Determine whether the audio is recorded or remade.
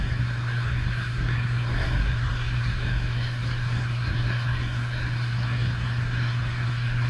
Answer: remade